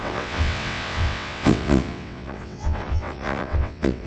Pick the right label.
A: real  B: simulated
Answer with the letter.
B